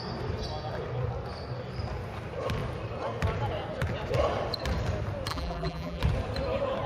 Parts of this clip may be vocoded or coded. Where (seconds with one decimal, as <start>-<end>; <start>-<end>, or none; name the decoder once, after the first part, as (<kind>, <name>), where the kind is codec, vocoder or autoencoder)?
5.3-6.0 (vocoder, BigVGAN v2)